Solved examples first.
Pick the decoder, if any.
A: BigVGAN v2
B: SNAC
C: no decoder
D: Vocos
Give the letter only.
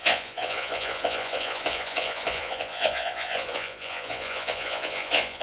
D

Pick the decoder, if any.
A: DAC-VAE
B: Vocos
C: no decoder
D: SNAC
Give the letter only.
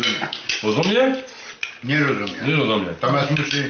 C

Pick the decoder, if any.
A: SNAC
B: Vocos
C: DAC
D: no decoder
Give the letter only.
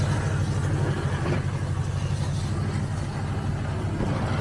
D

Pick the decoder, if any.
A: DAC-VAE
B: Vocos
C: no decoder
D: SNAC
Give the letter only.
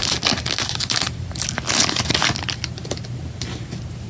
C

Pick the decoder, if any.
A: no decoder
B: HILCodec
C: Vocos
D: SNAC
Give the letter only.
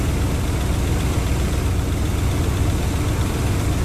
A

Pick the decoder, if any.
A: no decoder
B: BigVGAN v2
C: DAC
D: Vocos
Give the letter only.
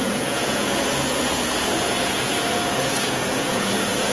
D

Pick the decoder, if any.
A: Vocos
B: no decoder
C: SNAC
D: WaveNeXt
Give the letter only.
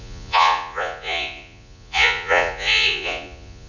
A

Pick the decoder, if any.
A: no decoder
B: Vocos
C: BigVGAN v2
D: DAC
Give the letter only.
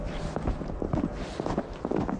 A